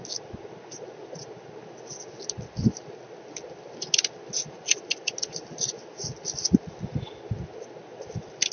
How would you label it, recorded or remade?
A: recorded